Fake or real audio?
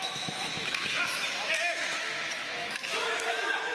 fake